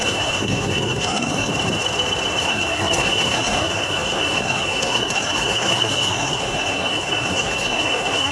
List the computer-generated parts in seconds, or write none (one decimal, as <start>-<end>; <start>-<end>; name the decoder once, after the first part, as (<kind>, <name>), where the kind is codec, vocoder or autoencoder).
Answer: 0.0-1.5 (codec, SNAC); 2.4-8.3